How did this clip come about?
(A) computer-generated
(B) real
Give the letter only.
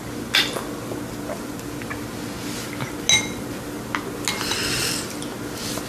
B